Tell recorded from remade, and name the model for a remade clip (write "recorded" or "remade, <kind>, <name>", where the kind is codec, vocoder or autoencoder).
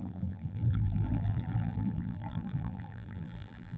remade, vocoder, BigVGAN v2